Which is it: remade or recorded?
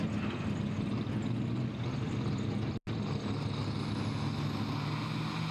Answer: recorded